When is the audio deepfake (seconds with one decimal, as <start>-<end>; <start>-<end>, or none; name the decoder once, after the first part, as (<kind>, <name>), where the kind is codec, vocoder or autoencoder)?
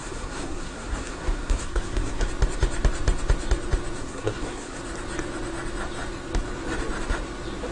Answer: 0.0-2.3 (codec, SNAC); 4.0-4.8